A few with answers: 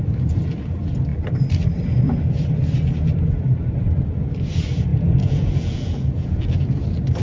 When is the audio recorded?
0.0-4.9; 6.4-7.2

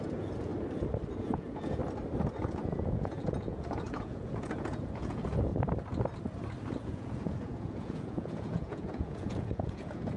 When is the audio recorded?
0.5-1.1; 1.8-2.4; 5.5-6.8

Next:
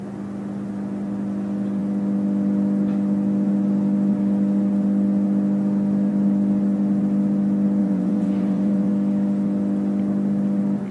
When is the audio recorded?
0.0-7.8; 8.9-10.9

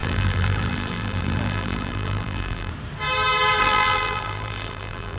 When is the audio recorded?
2.7-3.6

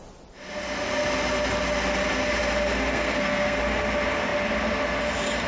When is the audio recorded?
0.0-2.9; 3.6-5.5

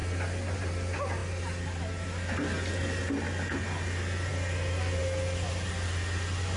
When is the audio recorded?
0.0-6.6

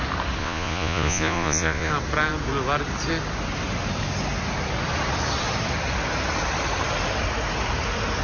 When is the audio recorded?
0.0-0.4; 1.9-8.2